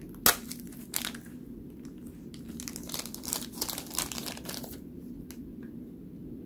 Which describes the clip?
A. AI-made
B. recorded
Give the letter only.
B